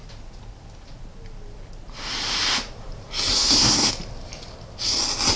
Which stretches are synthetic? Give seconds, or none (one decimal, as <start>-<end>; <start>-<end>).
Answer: 3.3-3.9